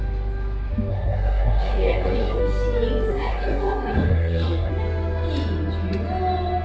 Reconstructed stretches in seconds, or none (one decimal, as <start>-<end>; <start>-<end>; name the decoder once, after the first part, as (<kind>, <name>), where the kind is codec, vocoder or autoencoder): 0.9-2.4 (codec, SNAC); 3.1-4.7